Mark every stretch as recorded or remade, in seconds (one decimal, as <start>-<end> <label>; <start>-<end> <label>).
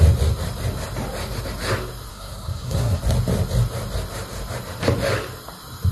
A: 0.0-2.1 recorded; 2.1-3.0 remade; 3.0-5.9 recorded